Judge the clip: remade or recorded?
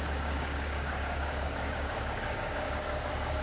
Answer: remade